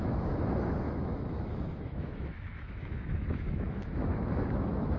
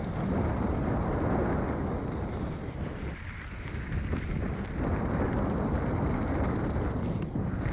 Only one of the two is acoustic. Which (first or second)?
second